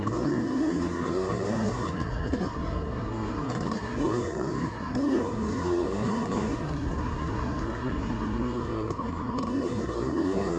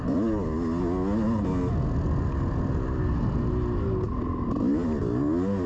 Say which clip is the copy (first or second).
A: first